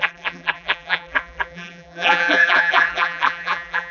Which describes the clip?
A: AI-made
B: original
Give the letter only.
A